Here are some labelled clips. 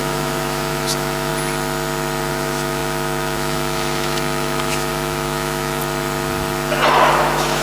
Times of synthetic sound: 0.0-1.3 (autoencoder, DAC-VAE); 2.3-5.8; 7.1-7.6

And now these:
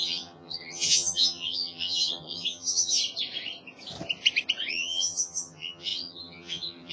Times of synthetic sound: 0.0-3.0 (vocoder, HiFi-GAN); 4.7-6.9